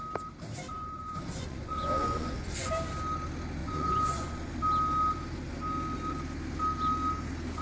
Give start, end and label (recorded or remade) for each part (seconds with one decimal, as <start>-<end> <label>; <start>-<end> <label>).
0.0-0.7 recorded; 0.7-2.7 remade; 2.7-3.6 recorded; 3.6-4.5 remade; 4.5-7.6 recorded